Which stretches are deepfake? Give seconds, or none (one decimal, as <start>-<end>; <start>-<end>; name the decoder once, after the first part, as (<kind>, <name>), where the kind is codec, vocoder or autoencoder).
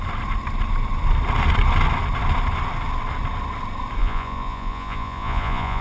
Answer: 4.0-5.8 (vocoder, Vocos)